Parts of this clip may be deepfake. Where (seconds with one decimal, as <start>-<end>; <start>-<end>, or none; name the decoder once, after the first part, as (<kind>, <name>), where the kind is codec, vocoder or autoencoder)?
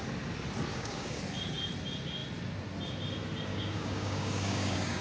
0.7-1.2 (codec, DAC); 3.5-5.0